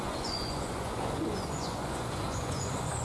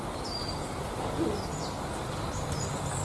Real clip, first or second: second